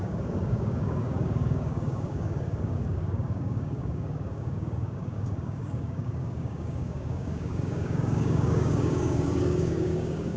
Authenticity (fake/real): fake